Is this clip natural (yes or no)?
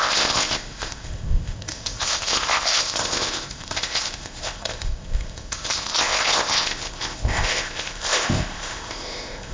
no